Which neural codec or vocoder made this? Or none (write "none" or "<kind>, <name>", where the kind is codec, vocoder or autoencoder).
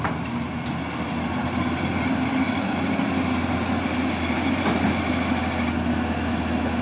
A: none